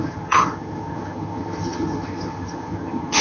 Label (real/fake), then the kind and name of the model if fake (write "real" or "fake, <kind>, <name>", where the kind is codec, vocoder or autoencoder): fake, vocoder, HiFi-GAN